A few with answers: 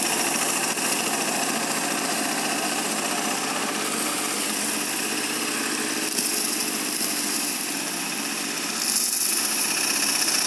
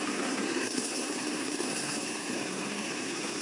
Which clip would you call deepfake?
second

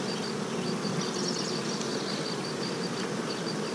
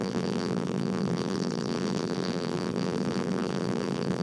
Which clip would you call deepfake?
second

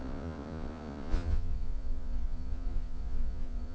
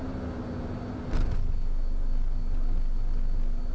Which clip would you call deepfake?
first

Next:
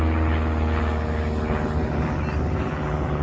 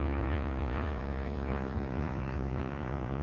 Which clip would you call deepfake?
second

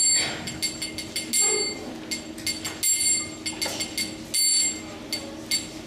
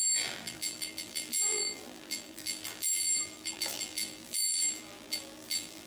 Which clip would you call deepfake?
second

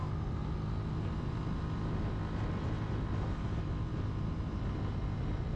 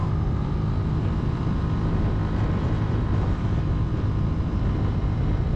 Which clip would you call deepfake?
second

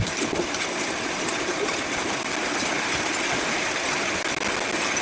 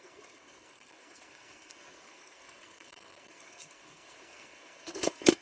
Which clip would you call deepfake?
second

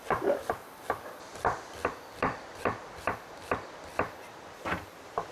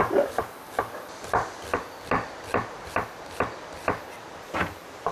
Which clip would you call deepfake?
first